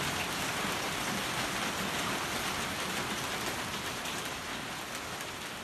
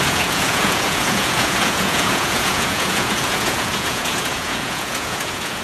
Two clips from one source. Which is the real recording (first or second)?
first